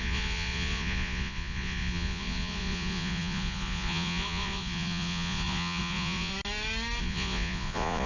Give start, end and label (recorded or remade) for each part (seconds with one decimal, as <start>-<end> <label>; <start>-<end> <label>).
0.0-6.3 remade; 6.3-7.0 recorded; 7.0-8.1 remade